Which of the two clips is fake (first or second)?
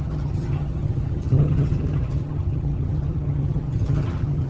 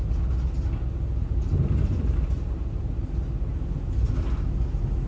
first